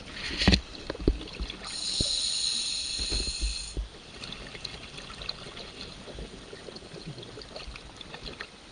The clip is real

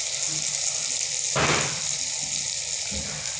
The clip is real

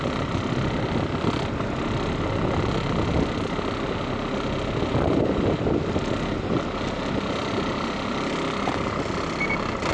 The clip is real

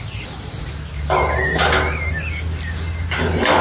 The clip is real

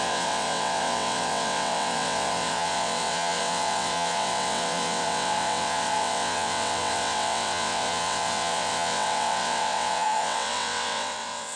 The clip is fake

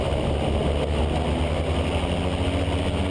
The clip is real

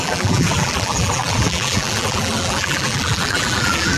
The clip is fake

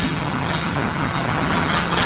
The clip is fake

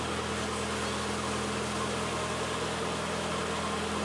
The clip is real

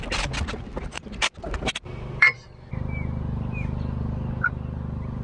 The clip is real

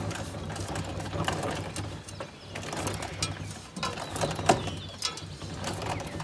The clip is real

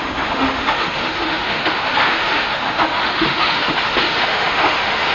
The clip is fake